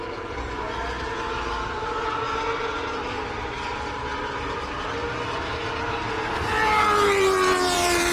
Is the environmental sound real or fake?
fake